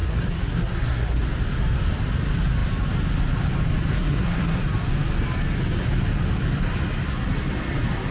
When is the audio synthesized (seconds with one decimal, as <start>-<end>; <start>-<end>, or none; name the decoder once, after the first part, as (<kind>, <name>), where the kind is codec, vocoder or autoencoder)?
0.0-1.2 (codec, SNAC); 3.9-4.6